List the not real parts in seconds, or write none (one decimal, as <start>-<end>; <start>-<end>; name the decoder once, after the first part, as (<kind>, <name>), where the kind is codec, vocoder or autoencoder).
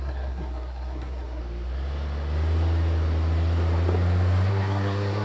0.0-1.4 (codec, SNAC); 4.5-5.2